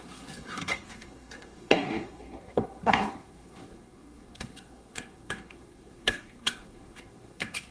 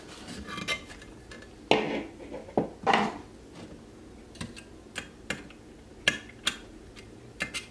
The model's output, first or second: first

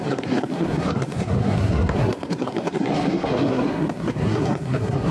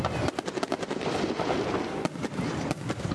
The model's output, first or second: first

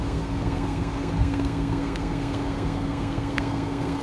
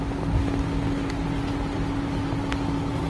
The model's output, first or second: first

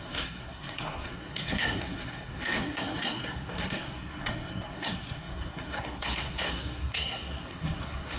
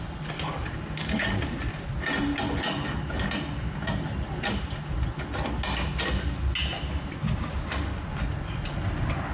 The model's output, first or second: first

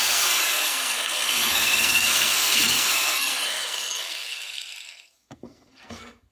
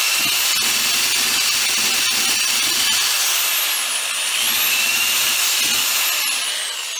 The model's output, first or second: first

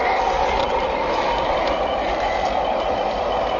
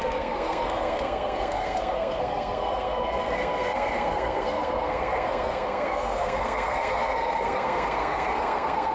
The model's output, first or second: second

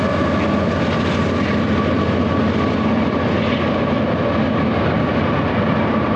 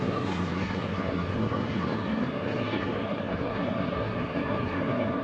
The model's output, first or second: second